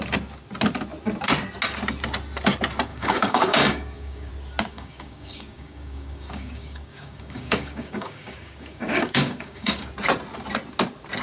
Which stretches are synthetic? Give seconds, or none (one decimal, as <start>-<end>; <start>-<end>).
2.9-4.3; 4.7-9.9